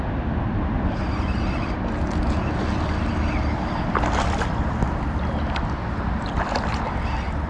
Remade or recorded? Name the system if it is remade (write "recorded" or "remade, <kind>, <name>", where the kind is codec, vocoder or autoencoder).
recorded